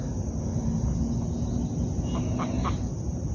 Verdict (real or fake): real